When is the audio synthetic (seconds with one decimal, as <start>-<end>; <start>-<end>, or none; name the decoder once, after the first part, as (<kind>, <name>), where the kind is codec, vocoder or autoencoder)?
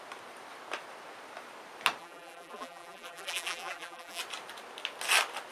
2.0-4.2 (vocoder, BigVGAN v2)